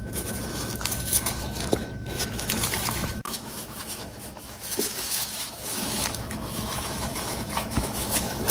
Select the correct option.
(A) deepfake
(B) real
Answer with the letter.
A